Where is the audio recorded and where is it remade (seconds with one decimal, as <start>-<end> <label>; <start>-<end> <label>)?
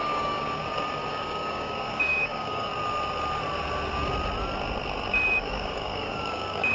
0.0-0.6 remade; 0.6-1.1 recorded; 1.1-2.7 remade; 2.7-5.4 recorded; 5.4-6.7 remade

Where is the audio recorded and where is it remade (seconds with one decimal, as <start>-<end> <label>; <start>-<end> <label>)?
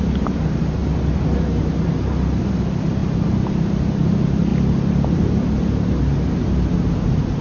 0.0-7.4 recorded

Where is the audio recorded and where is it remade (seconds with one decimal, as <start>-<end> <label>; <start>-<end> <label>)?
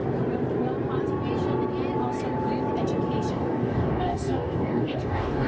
0.0-3.3 recorded; 3.3-5.5 remade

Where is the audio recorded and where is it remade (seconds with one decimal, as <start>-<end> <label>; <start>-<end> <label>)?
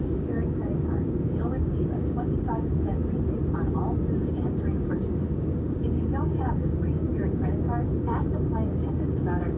0.0-3.0 remade; 3.0-4.2 recorded; 4.2-9.6 remade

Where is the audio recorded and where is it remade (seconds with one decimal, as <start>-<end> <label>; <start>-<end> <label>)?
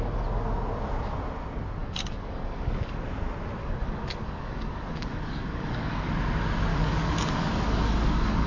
0.0-1.8 recorded; 1.8-3.0 remade; 3.0-3.6 recorded; 3.6-6.1 remade; 6.1-6.7 recorded; 6.7-8.5 remade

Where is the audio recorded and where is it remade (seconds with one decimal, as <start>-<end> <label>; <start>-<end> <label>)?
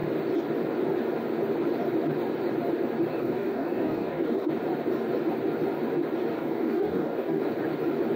0.0-3.1 recorded; 3.1-4.5 remade; 4.5-6.3 recorded; 6.3-7.4 remade; 7.4-8.2 recorded